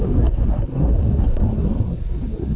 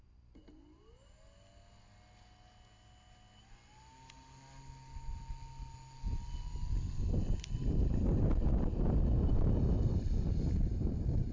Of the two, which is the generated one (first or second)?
first